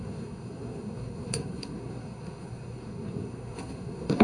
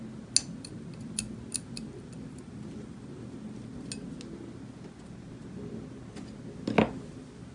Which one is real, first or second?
second